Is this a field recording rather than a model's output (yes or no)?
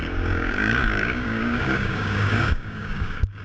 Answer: no